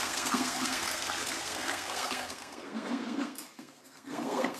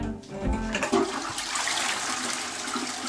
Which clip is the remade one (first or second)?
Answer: first